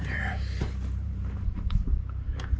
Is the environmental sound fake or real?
fake